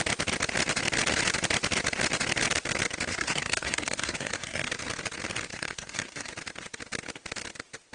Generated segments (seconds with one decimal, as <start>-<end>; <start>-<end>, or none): 3.1-4.7; 5.5-6.3